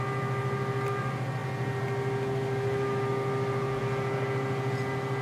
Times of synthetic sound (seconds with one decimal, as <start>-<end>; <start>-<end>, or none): none